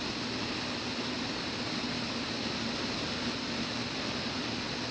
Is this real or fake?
real